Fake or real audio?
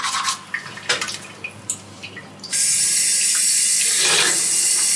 real